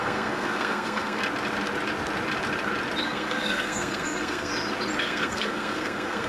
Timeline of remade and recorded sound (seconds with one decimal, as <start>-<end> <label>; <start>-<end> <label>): 0.0-1.2 remade; 1.2-3.0 recorded; 3.0-4.5 remade; 4.5-5.0 recorded; 5.0-6.3 remade

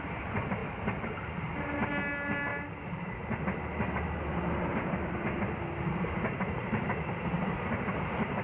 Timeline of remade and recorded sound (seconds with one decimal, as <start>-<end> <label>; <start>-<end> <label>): 0.0-8.4 recorded

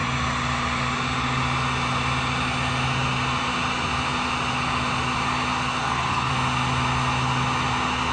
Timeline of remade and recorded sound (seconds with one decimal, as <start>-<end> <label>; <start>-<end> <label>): 0.0-5.8 recorded; 5.8-6.3 remade; 6.3-8.1 recorded

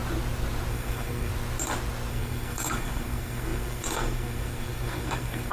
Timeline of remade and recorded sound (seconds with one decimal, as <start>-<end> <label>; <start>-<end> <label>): 0.0-0.7 recorded; 0.7-1.3 remade; 1.3-2.1 recorded; 2.1-5.5 remade

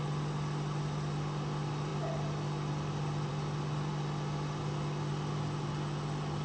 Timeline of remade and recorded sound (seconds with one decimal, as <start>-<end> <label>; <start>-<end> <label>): 0.0-6.4 recorded

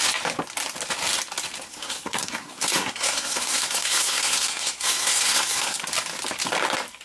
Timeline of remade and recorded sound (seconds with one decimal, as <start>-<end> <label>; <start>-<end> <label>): 0.0-1.7 recorded; 1.7-5.8 remade; 5.8-7.0 recorded